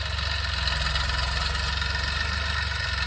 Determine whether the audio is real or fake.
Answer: real